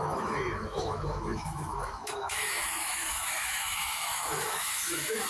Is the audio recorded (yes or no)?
no